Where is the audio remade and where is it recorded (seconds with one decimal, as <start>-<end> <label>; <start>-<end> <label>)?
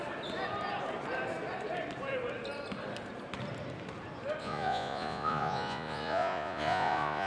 0.0-4.4 recorded; 4.4-7.3 remade